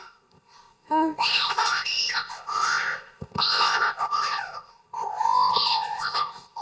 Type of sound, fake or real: fake